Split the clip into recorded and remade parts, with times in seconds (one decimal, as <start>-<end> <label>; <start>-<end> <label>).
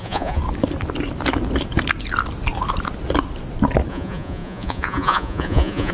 0.0-0.4 remade; 0.4-3.9 recorded; 3.9-5.9 remade